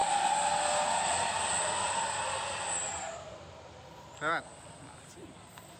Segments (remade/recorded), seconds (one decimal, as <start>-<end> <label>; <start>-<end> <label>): 0.0-5.8 recorded